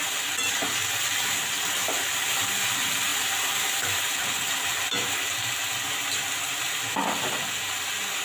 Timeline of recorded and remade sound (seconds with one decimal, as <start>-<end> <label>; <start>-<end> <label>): 0.0-3.1 recorded; 3.1-4.2 remade; 4.2-8.2 recorded